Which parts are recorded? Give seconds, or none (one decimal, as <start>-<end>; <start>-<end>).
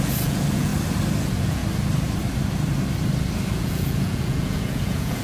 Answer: 0.7-1.2; 1.6-3.6